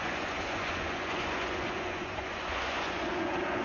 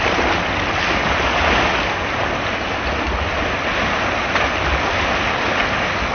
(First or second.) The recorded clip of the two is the second